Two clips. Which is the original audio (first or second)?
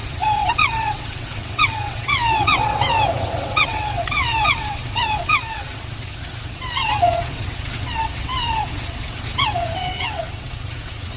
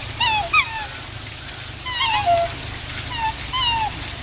second